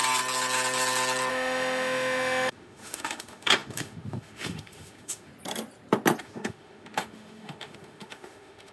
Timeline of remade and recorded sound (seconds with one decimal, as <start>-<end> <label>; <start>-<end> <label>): 0.0-1.3 recorded; 1.3-5.3 remade; 5.3-6.2 recorded; 6.2-8.7 remade